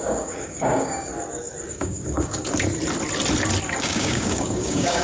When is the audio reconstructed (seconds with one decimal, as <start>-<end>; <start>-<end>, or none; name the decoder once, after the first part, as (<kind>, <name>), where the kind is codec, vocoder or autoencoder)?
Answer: 0.0-1.1 (codec, DAC); 1.7-2.4; 3.8-5.0

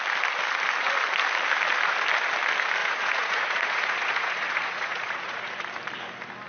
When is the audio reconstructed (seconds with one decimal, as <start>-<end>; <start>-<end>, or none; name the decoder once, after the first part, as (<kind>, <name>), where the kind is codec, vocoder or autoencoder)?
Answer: 2.8-5.5 (vocoder, Vocos)

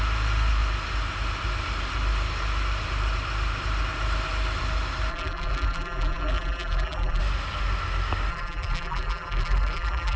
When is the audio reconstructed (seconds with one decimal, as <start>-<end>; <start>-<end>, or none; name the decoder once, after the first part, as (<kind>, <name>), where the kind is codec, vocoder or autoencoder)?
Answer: 5.1-7.2 (vocoder, BigVGAN v2); 8.3-10.2

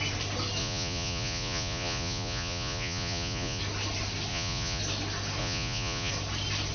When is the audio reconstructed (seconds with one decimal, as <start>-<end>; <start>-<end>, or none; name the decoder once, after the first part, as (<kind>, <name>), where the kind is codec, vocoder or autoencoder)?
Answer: 0.6-3.6 (vocoder, Vocos); 4.3-4.8; 5.4-6.1

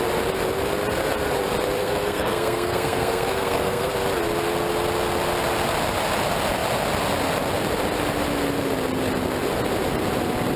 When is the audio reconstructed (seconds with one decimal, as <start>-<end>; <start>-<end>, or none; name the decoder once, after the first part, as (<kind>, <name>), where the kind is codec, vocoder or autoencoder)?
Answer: 1.8-3.9 (codec, SNAC)

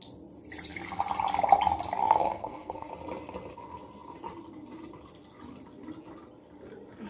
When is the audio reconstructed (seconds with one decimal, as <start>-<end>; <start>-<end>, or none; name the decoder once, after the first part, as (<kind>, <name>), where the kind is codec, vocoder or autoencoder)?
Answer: 2.0-2.9 (codec, SNAC)

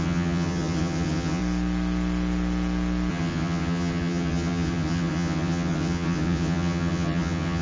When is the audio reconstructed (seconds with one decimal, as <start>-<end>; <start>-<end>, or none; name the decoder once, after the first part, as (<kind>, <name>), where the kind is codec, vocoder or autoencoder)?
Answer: 0.0-1.4 (vocoder, HiFi-GAN); 3.1-7.6

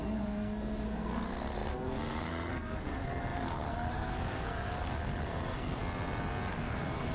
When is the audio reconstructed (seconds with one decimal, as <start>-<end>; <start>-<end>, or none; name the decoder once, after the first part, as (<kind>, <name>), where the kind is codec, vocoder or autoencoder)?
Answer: 0.0-5.8 (codec, SNAC); 6.5-7.1